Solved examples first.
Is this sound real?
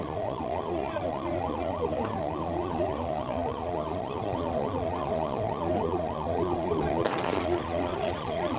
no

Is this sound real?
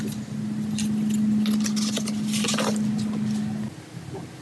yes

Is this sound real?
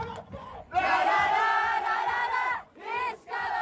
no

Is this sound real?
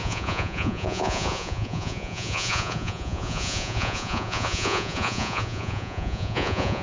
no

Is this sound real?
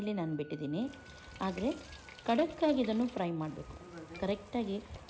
yes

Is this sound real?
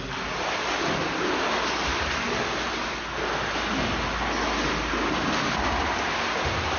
yes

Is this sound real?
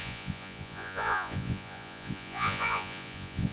no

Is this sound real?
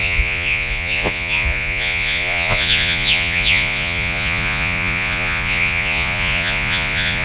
no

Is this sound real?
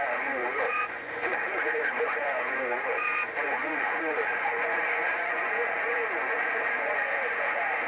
no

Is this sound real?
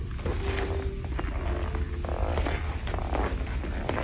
yes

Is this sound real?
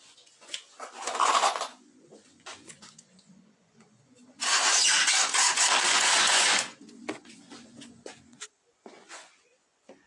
no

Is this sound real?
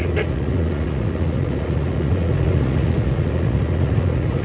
no